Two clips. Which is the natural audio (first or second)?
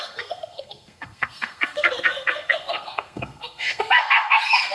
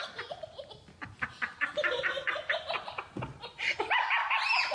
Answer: second